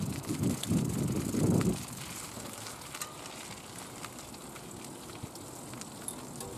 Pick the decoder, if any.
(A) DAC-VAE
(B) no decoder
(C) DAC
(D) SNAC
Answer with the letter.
B